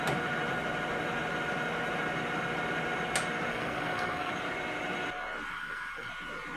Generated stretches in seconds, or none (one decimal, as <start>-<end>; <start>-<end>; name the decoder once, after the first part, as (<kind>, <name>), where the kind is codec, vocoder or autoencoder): 3.5-4.3 (codec, SNAC); 5.5-6.1